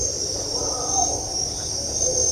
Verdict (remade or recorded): recorded